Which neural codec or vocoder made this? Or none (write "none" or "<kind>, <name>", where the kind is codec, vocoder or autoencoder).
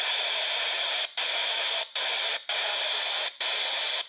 none